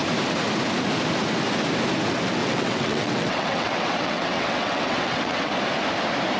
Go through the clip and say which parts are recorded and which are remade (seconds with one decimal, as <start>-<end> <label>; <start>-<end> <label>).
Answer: 0.0-2.4 recorded; 2.4-5.5 remade; 5.5-6.4 recorded